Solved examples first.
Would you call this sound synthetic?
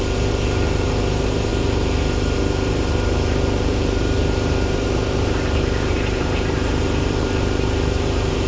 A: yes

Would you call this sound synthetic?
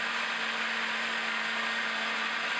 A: no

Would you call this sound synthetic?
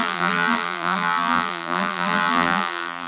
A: yes